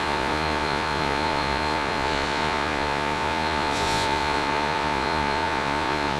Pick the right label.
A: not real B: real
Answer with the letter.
A